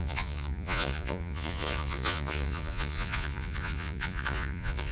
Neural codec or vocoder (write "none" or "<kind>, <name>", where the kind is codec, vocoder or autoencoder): vocoder, Vocos